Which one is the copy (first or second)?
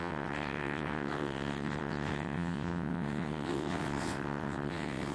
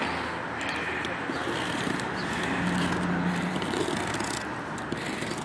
first